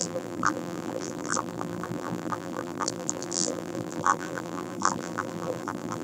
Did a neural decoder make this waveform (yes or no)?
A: yes